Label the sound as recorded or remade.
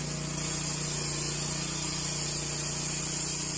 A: recorded